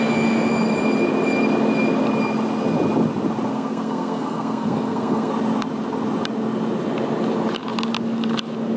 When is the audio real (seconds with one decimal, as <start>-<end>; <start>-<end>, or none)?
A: 0.0-3.5; 5.3-8.8